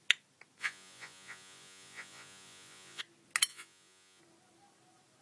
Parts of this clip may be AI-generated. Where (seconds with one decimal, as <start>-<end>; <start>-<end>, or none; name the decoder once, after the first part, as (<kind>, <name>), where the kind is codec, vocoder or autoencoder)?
0.6-3.0 (vocoder, Vocos); 3.5-4.2